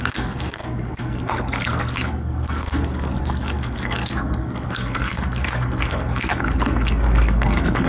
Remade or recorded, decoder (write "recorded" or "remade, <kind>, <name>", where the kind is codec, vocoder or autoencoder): remade, codec, SNAC